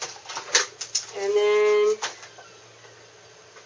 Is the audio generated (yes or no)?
no